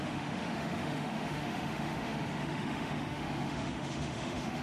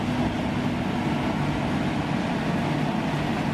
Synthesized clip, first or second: first